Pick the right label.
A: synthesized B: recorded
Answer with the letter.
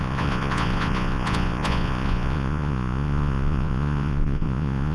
A